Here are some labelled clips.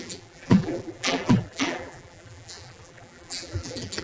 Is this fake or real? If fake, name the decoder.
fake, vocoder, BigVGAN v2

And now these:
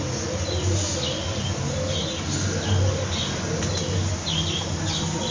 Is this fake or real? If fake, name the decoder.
real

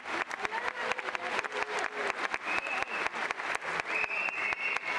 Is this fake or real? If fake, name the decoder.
real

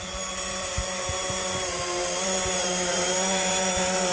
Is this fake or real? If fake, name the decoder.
fake, vocoder, BigVGAN v2